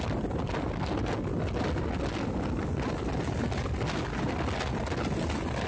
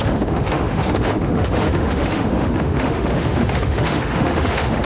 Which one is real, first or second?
first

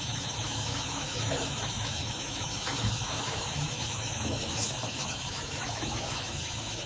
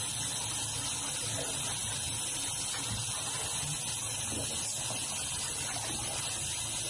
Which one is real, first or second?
second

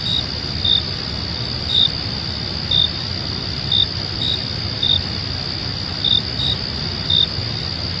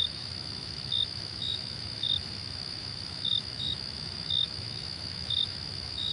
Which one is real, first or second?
first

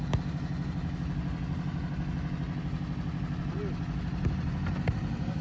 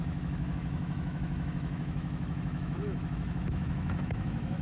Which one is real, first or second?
first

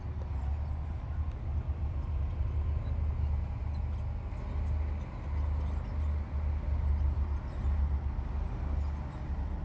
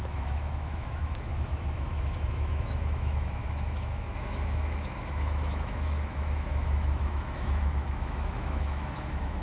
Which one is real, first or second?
first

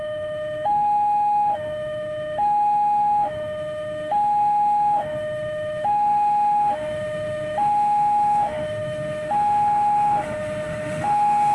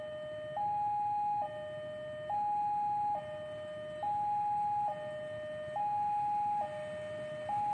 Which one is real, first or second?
second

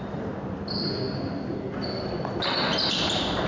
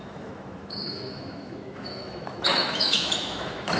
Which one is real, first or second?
first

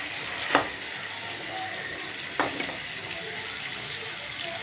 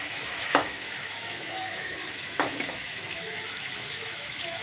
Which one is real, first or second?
first